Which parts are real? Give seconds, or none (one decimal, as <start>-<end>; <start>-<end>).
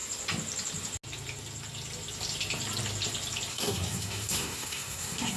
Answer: 0.0-3.5